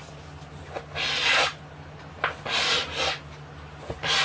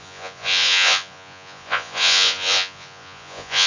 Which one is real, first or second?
first